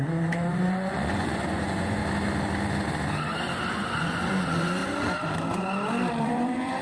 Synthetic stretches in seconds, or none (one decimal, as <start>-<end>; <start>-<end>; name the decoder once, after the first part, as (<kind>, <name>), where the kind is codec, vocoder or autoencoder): 0.0-2.0 (vocoder, Vocos); 3.9-4.8; 6.2-6.8